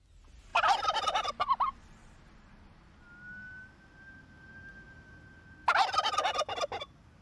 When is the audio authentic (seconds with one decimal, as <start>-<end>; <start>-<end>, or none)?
0.0-7.2